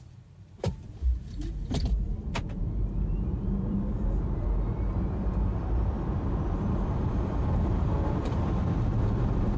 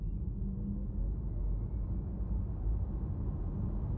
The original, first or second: second